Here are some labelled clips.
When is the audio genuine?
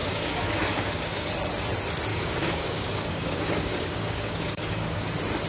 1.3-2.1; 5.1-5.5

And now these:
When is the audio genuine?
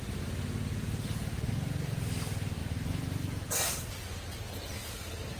0.0-5.4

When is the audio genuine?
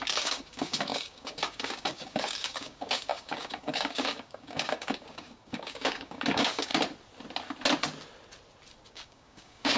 6.7-8.9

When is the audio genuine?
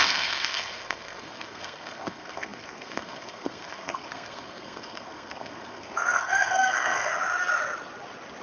7.1-8.4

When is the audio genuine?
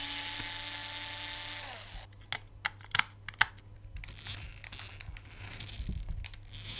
0.0-6.8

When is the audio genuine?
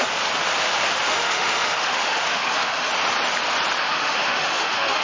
0.0-1.1; 2.9-3.8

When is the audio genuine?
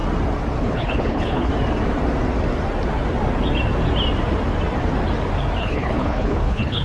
0.0-0.6; 1.5-5.6